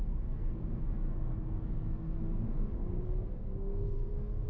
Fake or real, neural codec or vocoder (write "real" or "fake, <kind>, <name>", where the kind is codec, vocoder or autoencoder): fake, codec, SNAC